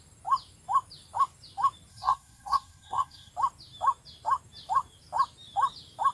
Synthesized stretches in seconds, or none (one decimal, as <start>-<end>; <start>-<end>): 1.9-3.3